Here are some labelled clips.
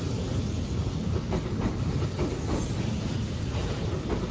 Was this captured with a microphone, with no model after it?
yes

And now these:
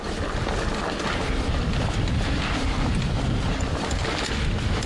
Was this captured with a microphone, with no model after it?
yes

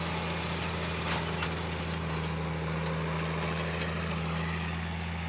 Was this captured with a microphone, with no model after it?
yes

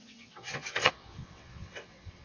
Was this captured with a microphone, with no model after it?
no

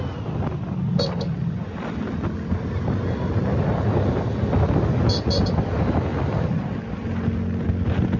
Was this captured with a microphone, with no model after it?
yes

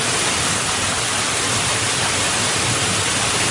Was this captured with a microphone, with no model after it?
yes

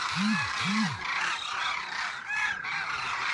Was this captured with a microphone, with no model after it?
yes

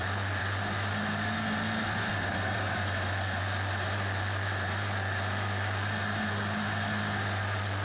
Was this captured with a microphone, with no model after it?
yes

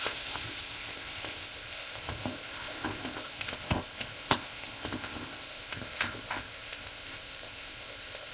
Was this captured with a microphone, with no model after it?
no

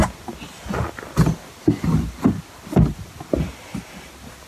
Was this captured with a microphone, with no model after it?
yes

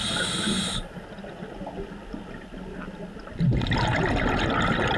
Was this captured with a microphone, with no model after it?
yes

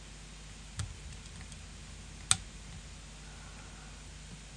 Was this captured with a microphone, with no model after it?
yes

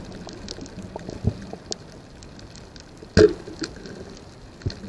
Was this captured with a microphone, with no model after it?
yes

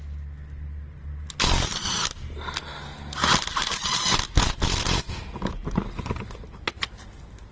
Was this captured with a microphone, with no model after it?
yes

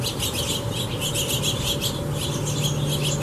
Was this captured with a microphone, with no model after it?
yes